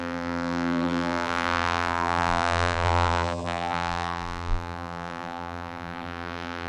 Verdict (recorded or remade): remade